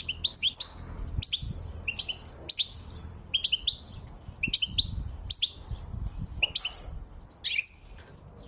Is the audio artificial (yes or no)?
no